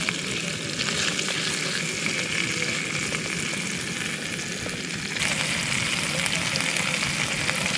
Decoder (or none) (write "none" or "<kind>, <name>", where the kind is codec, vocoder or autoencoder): none